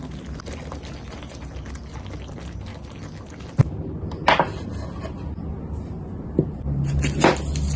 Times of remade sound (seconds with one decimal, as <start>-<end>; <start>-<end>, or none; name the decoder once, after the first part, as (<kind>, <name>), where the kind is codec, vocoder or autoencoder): none